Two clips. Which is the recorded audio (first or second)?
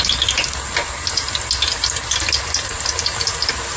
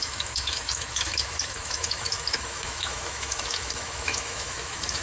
first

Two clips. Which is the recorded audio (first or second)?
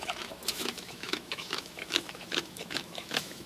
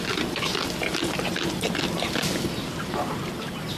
second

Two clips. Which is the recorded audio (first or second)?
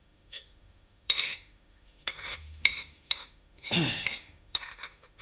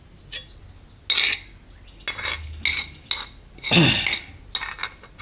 second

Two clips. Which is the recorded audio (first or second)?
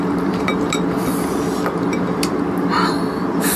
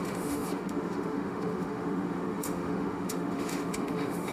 first